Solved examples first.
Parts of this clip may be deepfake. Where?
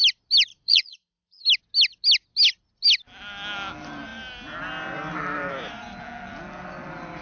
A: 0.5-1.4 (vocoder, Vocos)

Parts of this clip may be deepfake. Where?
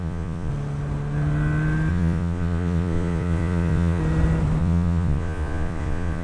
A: 0.0-0.5 (vocoder, Vocos); 1.9-4.0; 4.6-6.2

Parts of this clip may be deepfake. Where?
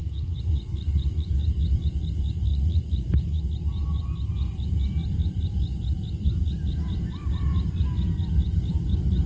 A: 0.0-1.3 (vocoder, Vocos); 2.5-3.4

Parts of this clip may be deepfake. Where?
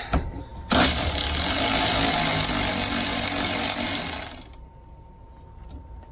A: none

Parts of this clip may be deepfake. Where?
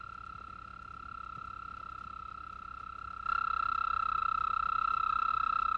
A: none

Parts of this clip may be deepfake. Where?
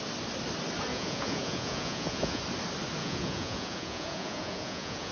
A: 0.9-2.4 (vocoder, Vocos); 3.0-5.1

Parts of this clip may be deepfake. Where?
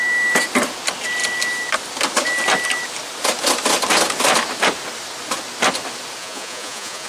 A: 6.2-7.1 (vocoder, Vocos)